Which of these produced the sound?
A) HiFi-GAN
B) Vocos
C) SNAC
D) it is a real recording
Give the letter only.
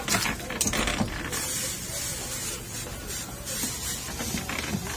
D